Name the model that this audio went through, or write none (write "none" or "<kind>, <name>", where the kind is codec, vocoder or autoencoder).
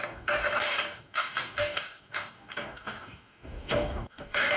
codec, DAC